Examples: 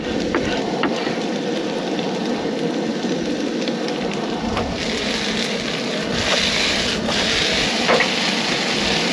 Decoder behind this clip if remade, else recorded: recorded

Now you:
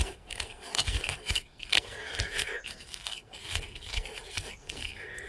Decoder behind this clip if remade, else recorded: remade, codec, SNAC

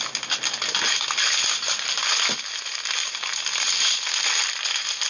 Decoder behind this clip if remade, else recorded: recorded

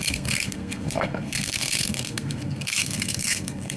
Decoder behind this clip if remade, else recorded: remade, codec, SNAC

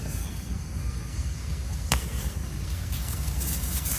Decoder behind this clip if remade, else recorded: remade, codec, SNAC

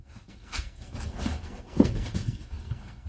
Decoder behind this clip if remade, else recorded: remade, codec, SNAC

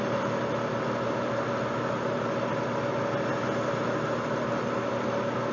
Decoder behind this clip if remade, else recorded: recorded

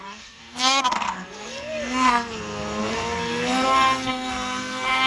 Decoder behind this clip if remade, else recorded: remade, codec, SNAC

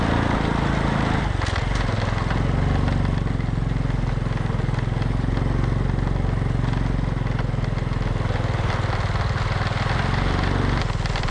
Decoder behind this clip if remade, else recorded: recorded